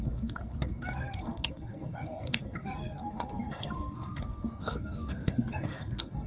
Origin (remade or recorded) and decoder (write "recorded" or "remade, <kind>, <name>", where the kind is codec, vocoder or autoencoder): remade, codec, SNAC